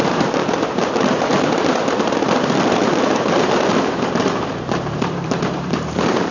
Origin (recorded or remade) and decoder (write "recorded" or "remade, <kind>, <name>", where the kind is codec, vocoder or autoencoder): remade, vocoder, BigVGAN v2